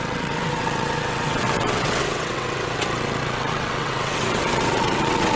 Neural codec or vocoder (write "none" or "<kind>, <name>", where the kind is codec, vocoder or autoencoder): vocoder, WaveNeXt